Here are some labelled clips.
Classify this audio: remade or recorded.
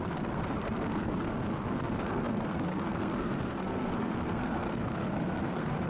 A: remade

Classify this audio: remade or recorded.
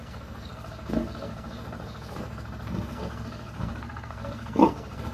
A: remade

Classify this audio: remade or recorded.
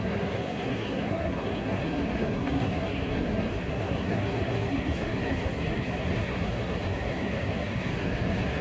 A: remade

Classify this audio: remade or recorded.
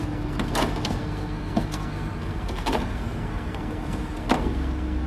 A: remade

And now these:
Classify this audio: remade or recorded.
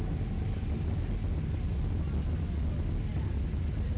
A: recorded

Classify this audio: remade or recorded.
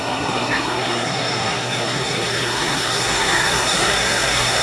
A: remade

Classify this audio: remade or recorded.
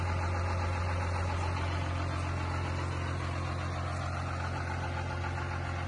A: recorded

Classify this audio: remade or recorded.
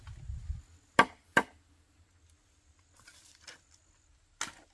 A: recorded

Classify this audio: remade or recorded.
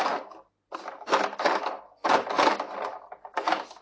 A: recorded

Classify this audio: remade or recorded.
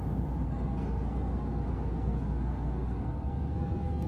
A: remade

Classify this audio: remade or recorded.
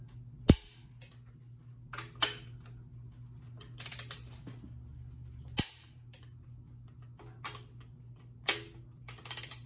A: recorded